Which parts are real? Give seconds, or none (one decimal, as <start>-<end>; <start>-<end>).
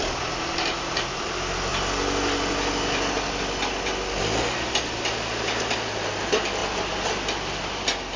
0.0-8.2